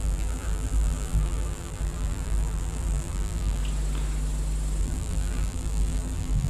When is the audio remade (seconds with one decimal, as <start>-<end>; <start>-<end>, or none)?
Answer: 0.0-3.6; 4.8-6.5